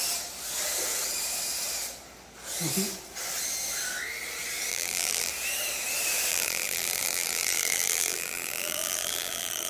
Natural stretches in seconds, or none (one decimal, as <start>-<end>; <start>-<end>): 0.0-4.7; 5.3-6.3